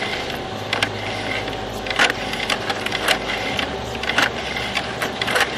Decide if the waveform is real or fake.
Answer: real